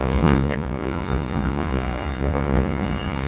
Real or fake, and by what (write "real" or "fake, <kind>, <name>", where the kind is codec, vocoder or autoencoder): fake, vocoder, Vocos